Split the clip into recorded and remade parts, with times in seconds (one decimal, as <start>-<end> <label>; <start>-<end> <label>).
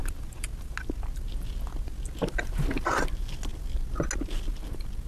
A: 0.0-5.1 recorded